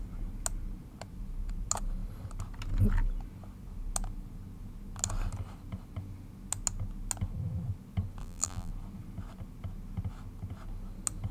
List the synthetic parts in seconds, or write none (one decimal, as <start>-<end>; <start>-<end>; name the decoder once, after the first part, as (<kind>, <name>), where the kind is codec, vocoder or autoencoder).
8.2-8.7 (vocoder, BigVGAN v2)

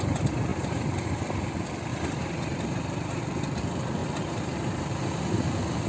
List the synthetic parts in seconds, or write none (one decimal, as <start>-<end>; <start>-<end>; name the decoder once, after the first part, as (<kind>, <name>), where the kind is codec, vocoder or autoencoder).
0.5-1.1 (vocoder, BigVGAN v2); 1.9-3.2; 4.0-4.9

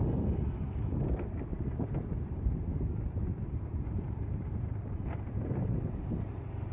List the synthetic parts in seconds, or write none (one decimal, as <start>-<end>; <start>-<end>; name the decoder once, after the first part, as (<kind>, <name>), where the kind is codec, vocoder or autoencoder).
1.5-5.5 (vocoder, BigVGAN v2)

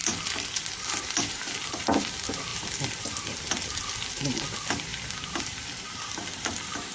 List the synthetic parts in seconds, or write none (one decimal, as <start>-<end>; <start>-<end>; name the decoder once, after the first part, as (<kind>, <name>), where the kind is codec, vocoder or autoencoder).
0.6-6.9 (vocoder, BigVGAN v2)